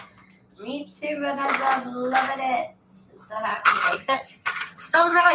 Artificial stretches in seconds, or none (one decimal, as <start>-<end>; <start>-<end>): 3.5-5.3